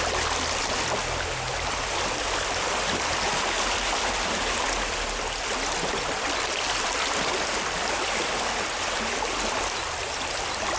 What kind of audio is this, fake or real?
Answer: real